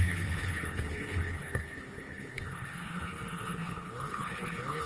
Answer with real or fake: fake